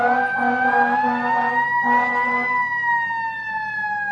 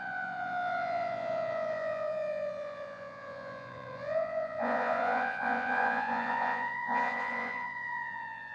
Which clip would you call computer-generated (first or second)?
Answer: second